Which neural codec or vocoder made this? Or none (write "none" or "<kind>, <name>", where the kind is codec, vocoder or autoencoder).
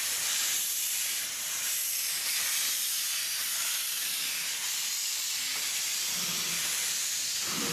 vocoder, BigVGAN v2